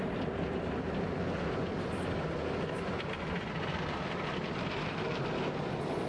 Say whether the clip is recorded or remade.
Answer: recorded